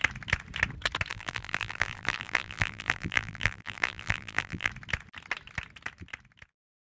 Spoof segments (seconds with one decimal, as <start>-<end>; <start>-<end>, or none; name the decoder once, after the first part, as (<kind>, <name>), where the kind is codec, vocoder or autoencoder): 1.1-4.7 (vocoder, BigVGAN v2)